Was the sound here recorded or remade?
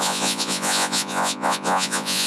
remade